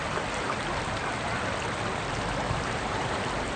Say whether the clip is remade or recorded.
remade